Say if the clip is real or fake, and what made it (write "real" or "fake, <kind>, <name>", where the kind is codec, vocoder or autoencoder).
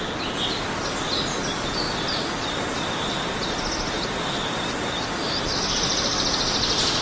real